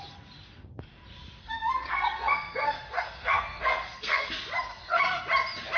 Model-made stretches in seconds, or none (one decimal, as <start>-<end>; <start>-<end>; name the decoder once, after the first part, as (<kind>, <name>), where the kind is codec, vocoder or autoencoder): 1.4-4.3 (codec, SNAC); 4.7-5.2